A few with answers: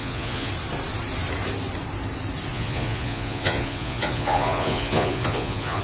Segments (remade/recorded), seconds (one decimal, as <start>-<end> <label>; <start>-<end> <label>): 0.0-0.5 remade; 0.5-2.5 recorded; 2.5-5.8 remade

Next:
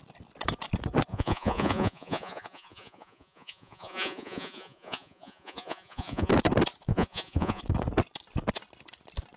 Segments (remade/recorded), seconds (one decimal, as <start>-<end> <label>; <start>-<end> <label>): 0.0-1.1 recorded; 1.1-6.3 remade; 6.3-6.9 recorded; 6.9-7.6 remade; 7.6-9.4 recorded

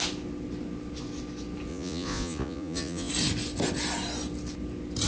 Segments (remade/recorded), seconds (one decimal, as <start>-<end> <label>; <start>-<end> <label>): 0.0-1.7 recorded; 1.7-3.1 remade; 3.1-5.1 recorded